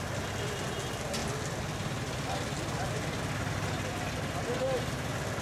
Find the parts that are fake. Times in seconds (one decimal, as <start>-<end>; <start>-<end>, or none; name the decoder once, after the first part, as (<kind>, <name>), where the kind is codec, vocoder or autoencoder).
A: none